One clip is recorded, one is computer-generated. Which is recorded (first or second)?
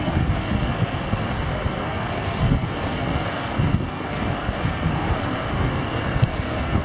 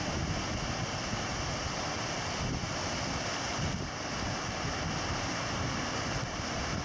second